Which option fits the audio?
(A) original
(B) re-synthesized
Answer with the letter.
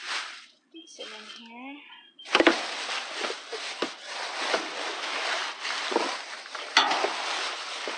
A